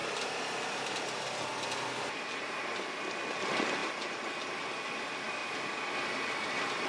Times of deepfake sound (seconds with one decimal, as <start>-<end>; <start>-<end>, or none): none